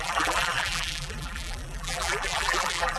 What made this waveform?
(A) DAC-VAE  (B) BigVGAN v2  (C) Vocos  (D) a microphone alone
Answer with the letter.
B